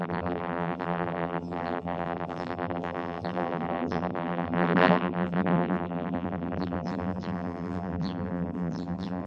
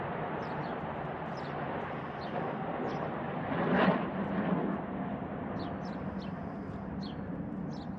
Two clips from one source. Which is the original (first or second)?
second